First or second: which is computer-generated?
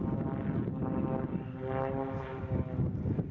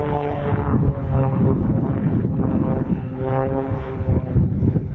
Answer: second